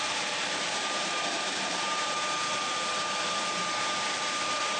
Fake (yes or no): yes